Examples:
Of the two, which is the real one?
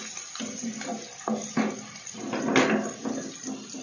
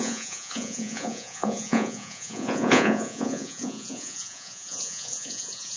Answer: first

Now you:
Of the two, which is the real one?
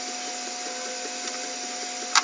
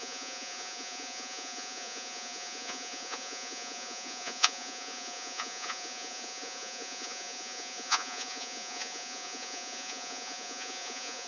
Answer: first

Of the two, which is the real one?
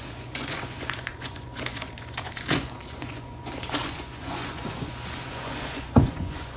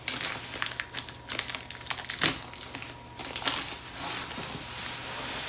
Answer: second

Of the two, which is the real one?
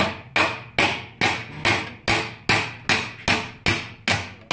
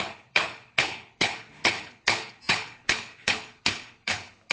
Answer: first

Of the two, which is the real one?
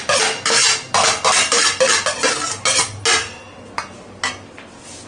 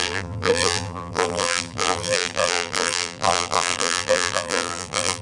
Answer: first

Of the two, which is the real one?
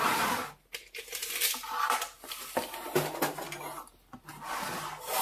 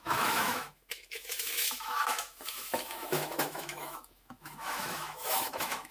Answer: first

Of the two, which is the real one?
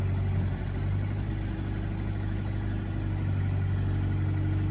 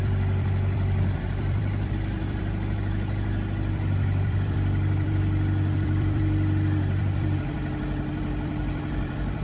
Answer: first